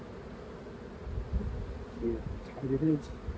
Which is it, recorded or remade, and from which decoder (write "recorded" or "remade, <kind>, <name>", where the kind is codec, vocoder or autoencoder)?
recorded